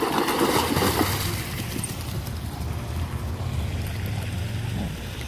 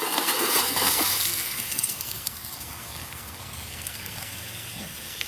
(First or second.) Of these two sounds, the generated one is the second